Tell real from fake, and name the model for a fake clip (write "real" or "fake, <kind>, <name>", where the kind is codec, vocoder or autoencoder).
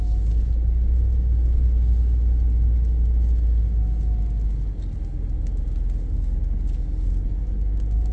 real